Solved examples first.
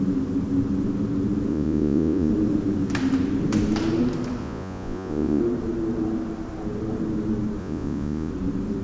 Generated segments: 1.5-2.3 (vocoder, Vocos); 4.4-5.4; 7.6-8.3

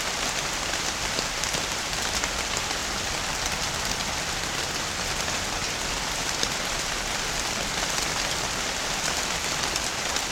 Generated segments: none

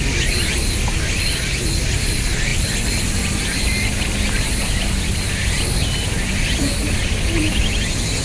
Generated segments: none

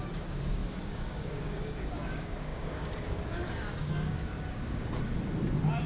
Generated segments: 0.0-5.1 (codec, DAC)

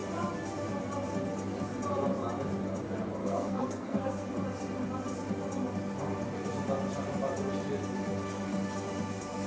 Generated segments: 3.2-4.3 (codec, SNAC)

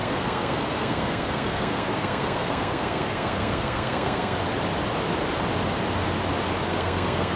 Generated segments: 0.0-4.4 (codec, SNAC); 6.7-7.4

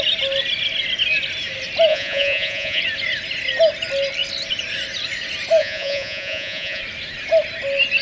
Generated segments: 1.9-2.8 (vocoder, Vocos); 5.6-6.8